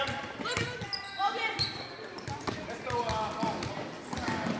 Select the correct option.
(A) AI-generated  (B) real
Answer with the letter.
B